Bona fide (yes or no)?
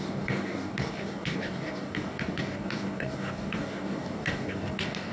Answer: no